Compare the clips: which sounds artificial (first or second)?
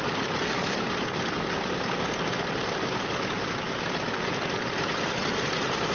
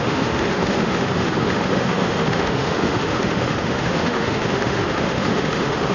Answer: second